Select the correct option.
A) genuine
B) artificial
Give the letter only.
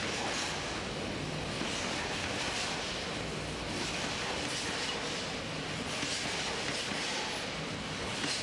A